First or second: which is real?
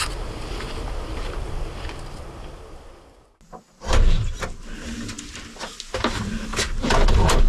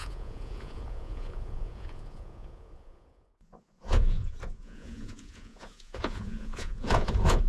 first